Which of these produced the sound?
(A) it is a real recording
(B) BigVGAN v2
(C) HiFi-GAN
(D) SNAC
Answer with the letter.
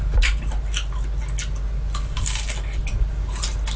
A